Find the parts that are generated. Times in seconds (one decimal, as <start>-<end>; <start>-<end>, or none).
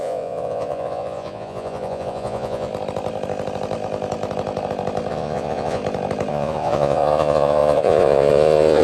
0.0-2.7; 5.1-5.8; 6.3-8.8